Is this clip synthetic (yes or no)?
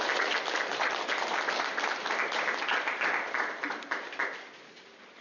no